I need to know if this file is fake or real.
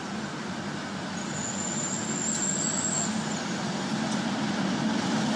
real